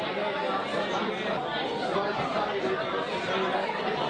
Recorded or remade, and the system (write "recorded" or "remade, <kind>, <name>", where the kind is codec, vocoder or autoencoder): recorded